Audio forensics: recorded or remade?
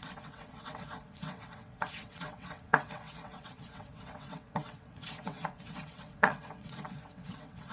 remade